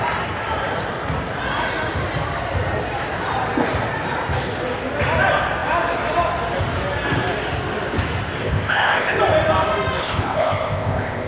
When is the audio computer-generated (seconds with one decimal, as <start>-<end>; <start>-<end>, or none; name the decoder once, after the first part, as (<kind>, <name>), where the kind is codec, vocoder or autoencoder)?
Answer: 8.4-9.2 (codec, ZipCodec); 10.0-11.3